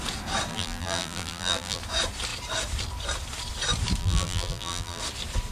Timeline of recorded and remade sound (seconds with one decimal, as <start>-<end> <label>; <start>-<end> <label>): 0.0-0.5 recorded; 0.5-1.8 remade; 1.8-4.0 recorded; 4.0-5.0 remade; 5.0-5.5 recorded